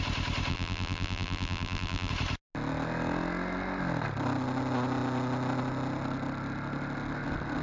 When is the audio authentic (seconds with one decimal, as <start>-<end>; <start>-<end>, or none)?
0.0-0.5; 2.1-7.6